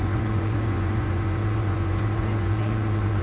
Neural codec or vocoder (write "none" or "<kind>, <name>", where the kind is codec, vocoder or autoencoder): vocoder, Vocos